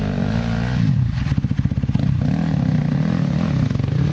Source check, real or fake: real